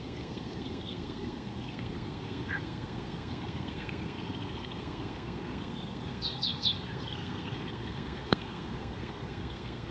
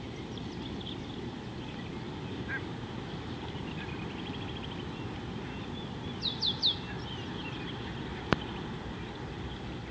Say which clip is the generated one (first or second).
first